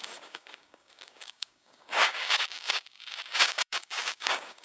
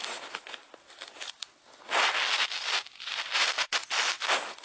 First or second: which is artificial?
first